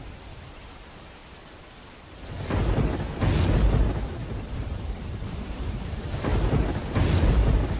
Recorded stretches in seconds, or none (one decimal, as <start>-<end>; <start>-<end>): 1.2-4.5